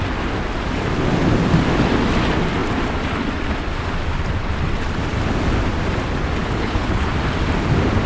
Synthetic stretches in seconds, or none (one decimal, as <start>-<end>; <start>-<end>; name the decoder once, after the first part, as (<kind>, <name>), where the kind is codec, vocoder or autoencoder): 6.4-7.1 (codec, HILCodec)